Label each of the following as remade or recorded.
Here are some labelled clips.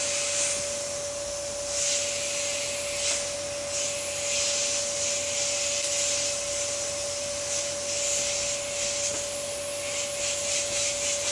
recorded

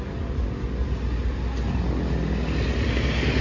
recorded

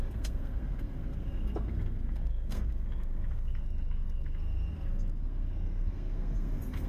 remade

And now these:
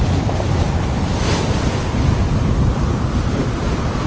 recorded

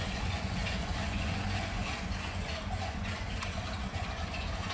remade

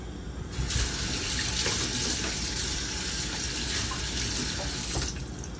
recorded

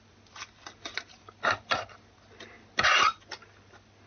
recorded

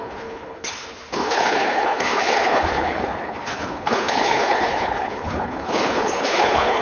remade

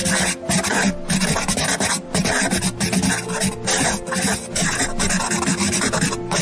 recorded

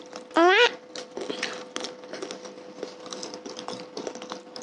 recorded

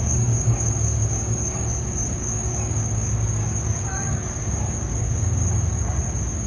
remade